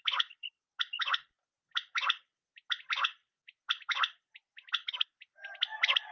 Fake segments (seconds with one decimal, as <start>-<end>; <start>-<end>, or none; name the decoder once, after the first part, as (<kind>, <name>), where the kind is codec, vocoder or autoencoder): none